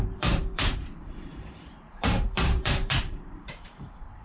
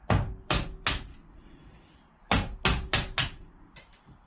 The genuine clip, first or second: second